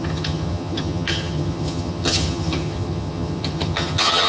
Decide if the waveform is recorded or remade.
remade